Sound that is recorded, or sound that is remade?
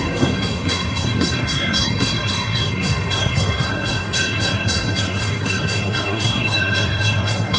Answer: remade